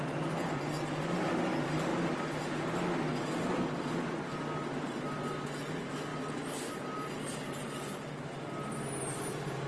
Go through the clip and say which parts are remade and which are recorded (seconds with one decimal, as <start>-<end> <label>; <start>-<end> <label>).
0.0-9.7 recorded